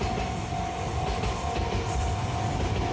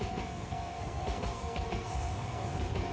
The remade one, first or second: second